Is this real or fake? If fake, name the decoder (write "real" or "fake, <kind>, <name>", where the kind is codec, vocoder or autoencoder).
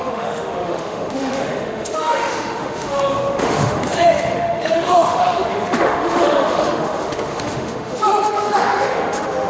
fake, autoencoder, DAC-VAE